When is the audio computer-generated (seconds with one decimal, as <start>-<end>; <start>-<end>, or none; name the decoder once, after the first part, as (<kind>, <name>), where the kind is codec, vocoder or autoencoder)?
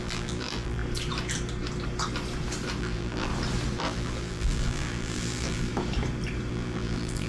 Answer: 0.0-0.8 (vocoder, BigVGAN v2); 2.8-3.3; 3.8-5.7; 6.5-7.3